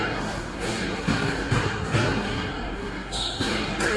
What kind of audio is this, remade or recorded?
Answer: remade